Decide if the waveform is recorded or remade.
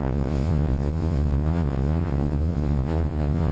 remade